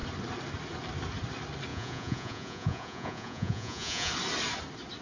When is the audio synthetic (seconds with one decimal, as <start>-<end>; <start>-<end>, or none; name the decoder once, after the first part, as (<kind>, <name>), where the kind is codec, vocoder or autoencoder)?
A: 1.7-4.1 (vocoder, Vocos)

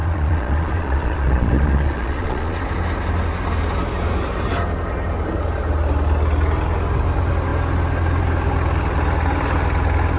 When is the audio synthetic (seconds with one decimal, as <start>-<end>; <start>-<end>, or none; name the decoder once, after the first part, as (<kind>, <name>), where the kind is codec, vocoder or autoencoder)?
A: 0.0-2.6 (vocoder, Vocos)

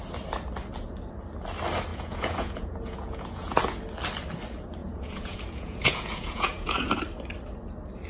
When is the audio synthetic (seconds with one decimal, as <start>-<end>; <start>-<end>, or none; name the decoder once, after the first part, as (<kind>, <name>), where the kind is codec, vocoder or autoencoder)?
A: 1.9-3.8 (vocoder, Vocos); 4.8-6.9

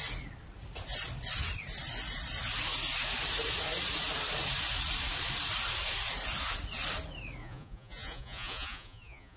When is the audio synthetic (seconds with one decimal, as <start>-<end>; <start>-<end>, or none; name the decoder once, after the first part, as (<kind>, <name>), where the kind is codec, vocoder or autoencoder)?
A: 7.4-9.4 (vocoder, Vocos)

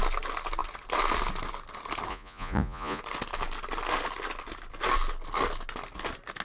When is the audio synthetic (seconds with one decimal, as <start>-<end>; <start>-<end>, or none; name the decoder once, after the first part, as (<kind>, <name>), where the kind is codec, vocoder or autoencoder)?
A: 2.1-3.0 (vocoder, Vocos)

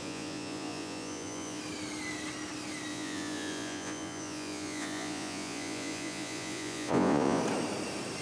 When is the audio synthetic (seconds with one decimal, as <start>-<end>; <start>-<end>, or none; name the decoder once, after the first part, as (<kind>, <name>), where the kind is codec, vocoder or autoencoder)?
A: 0.0-1.6 (vocoder, Vocos); 2.9-7.4

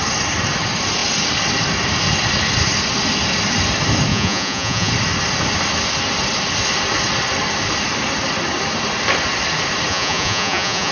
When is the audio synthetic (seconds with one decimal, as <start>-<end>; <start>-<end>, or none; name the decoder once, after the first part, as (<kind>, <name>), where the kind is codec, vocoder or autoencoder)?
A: 4.1-4.9 (vocoder, Vocos); 9.9-10.9

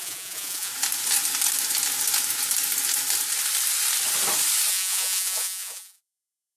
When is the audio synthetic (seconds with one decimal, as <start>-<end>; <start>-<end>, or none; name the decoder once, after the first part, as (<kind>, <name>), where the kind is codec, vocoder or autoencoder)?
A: 0.0-0.7 (vocoder, Vocos); 4.7-6.6